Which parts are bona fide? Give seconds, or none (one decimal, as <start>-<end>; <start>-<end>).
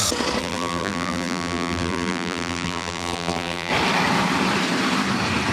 0.0-0.4; 3.7-5.5